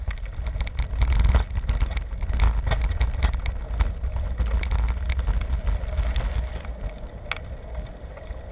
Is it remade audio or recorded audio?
recorded